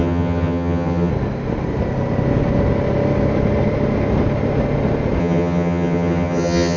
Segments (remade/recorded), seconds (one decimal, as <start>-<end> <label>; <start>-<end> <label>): 0.0-1.1 remade; 1.1-5.2 recorded; 5.2-6.8 remade